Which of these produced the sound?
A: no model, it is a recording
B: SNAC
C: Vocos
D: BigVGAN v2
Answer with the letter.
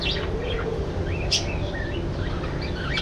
A